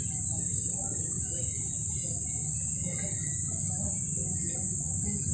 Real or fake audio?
real